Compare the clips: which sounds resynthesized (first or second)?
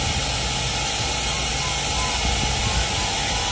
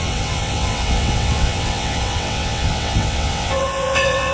second